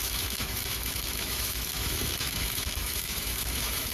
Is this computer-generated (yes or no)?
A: yes